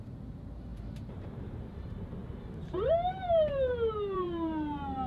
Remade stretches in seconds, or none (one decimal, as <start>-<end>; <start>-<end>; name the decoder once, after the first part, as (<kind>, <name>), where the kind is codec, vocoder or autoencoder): 0.0-5.1 (vocoder, BigVGAN v2)